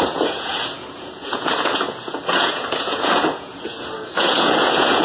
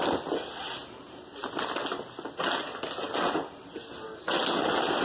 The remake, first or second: first